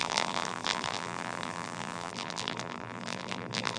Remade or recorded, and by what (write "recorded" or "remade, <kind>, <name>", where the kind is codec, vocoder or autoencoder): remade, vocoder, BigVGAN v2